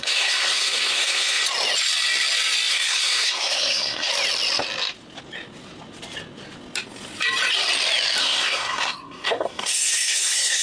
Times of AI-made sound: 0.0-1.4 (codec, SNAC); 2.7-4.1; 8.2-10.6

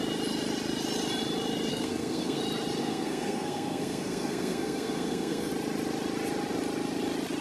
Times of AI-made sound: 1.7-2.4 (codec, SNAC); 2.8-5.5

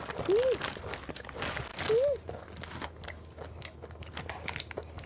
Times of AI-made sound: none

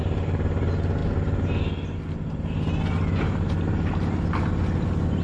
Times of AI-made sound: none